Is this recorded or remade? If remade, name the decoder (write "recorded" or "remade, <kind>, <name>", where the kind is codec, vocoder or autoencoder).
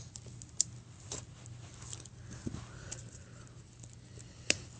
recorded